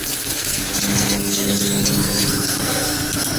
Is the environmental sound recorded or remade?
remade